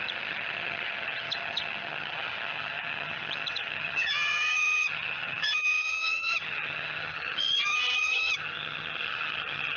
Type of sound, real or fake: fake